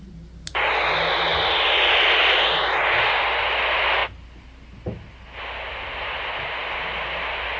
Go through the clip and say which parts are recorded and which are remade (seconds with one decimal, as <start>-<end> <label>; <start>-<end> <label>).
0.0-7.6 recorded